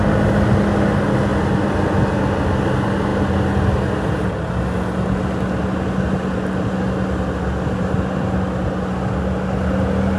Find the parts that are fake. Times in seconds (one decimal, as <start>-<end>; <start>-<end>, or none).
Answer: none